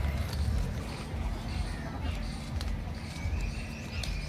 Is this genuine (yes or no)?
yes